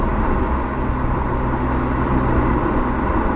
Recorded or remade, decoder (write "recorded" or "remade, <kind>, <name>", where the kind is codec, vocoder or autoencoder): recorded